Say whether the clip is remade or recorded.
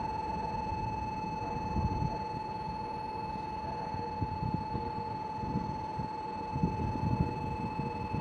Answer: recorded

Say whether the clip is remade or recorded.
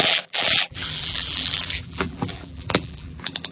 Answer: remade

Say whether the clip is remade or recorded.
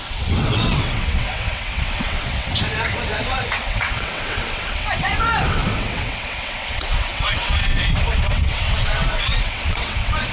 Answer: remade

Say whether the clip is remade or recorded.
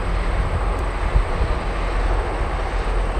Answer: recorded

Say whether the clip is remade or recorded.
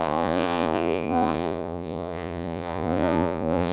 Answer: remade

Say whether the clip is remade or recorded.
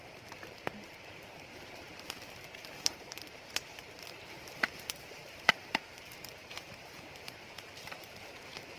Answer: remade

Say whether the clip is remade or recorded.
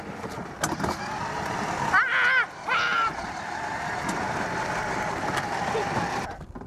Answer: recorded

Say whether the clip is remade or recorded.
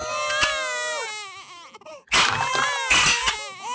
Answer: recorded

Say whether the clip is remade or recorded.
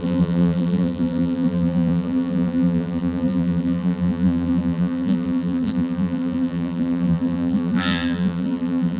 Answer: remade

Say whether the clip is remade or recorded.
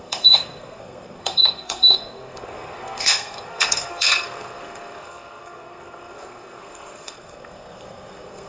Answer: remade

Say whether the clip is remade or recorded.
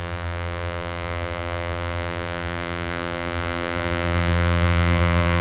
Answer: remade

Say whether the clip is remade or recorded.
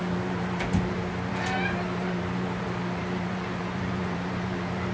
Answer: remade